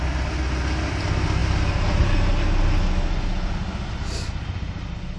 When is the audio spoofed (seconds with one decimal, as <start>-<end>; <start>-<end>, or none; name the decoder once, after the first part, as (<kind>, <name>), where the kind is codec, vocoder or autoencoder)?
none